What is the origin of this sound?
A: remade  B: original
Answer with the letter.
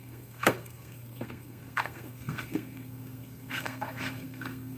A